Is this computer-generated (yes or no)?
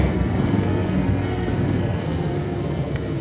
yes